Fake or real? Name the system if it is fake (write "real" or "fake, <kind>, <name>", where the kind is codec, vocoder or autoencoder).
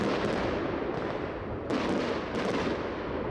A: real